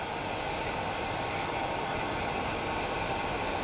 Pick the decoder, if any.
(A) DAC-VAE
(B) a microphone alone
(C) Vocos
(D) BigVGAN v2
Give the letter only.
B